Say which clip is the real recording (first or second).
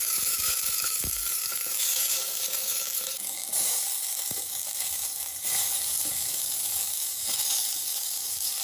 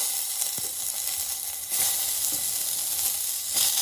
second